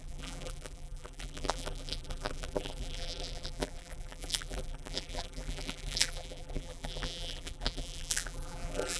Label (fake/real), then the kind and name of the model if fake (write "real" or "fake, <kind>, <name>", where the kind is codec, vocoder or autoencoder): fake, vocoder, BigVGAN v2